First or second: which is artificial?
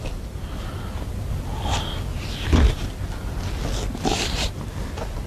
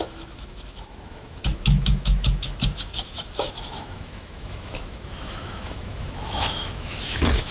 second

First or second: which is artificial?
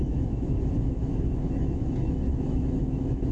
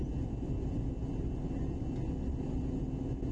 first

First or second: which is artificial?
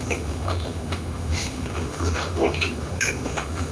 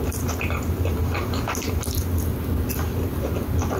first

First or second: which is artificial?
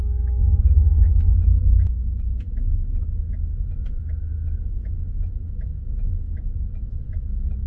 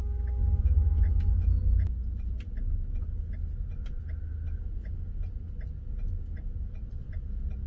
first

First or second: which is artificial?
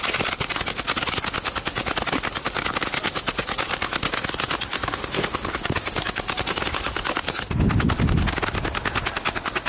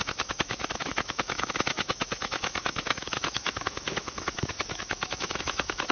second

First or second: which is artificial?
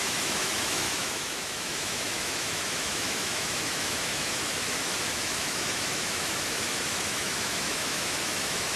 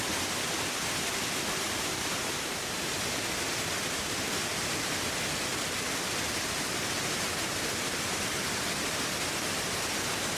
first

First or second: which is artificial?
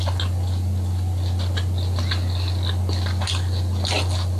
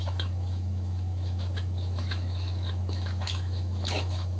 second